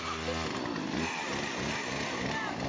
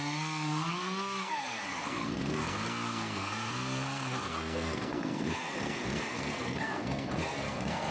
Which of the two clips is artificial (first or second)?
second